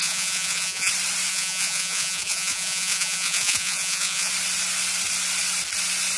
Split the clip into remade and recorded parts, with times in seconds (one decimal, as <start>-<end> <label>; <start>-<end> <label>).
0.0-0.9 remade; 0.9-1.3 recorded; 1.3-4.3 remade; 4.3-6.2 recorded